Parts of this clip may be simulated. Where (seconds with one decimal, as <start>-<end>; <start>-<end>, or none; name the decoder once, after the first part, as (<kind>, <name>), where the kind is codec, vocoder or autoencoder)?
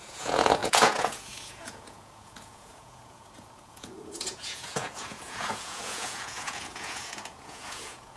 0.0-8.2 (vocoder, Vocos)